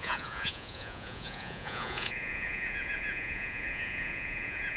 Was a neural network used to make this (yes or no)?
yes